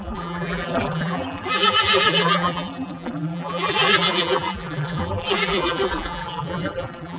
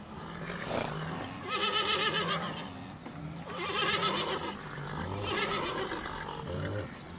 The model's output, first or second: first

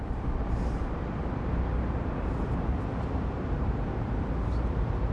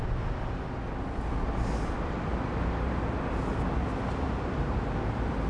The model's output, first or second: first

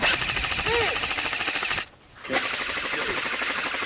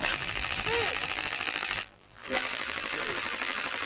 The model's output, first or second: second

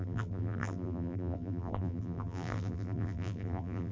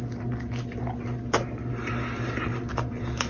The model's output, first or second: first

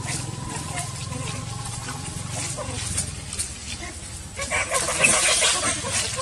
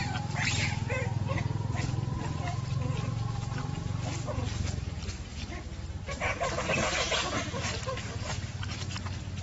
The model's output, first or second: first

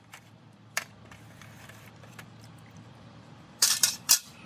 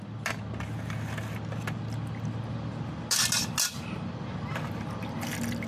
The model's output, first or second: first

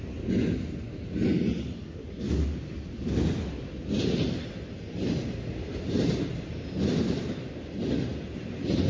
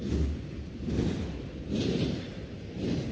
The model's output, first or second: second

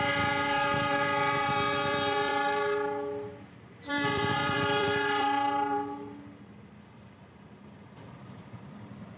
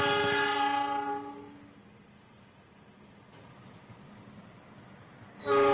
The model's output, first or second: first